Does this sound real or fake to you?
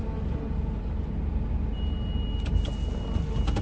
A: real